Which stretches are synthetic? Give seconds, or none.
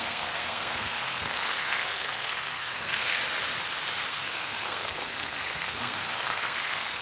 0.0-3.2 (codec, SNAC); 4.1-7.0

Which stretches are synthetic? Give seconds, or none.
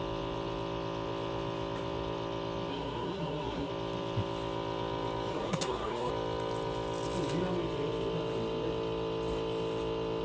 2.7-3.7 (codec, SNAC); 5.3-6.1